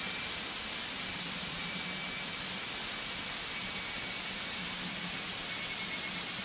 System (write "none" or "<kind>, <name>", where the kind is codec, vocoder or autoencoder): none